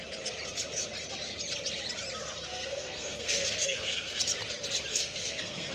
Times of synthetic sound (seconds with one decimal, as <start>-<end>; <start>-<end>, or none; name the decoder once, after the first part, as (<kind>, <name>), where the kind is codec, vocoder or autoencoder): 2.5-4.2 (codec, SNAC); 4.9-5.7